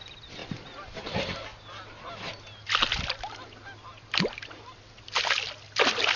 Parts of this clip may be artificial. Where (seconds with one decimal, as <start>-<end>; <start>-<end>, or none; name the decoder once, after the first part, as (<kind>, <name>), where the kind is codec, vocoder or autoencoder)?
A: none